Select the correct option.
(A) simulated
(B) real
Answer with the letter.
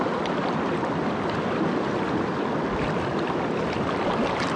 B